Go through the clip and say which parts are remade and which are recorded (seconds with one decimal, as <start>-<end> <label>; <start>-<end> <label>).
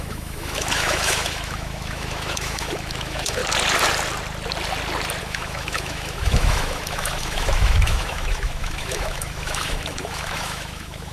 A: 0.0-3.4 remade; 3.4-5.2 recorded; 5.2-11.1 remade